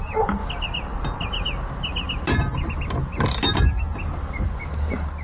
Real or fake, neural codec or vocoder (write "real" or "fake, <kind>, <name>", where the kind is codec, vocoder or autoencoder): real